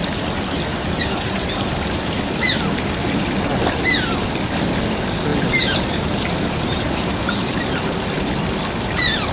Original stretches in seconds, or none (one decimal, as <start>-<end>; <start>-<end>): 0.0-0.7; 2.1-5.3; 7.6-9.3